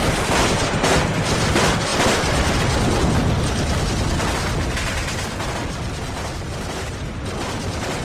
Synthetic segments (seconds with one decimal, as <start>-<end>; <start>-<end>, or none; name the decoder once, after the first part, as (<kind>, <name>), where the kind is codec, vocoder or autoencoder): none